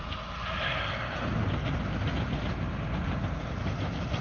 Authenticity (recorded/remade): recorded